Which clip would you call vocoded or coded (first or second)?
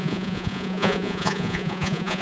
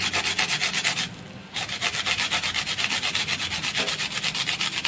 first